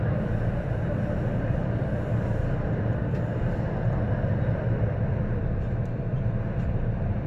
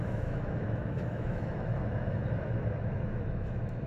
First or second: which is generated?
second